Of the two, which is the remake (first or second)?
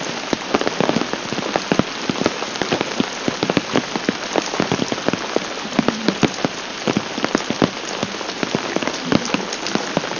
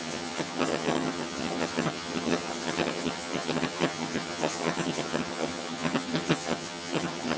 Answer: second